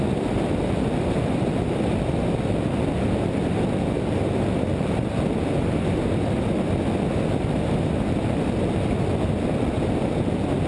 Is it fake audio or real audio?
real